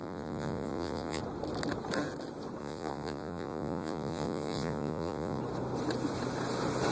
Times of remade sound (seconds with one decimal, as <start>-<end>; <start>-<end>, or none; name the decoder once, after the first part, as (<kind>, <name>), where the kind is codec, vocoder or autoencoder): 0.0-1.2 (vocoder, Vocos); 2.6-5.4